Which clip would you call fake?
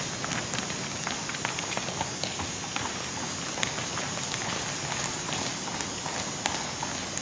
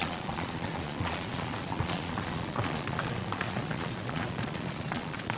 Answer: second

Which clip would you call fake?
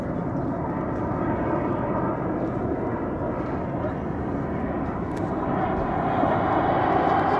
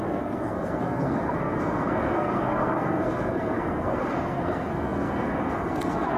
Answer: second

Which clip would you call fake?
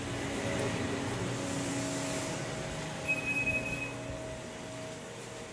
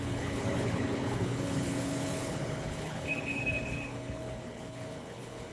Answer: second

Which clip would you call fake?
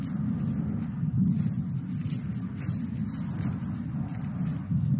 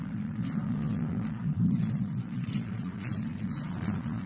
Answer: second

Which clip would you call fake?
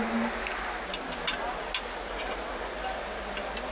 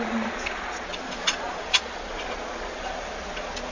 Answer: second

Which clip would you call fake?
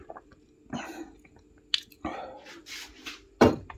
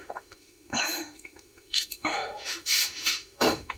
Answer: second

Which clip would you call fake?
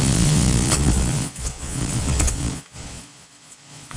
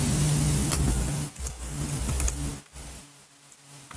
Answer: first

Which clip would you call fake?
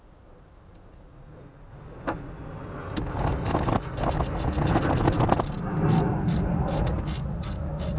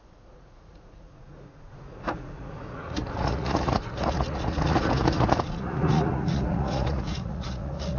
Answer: second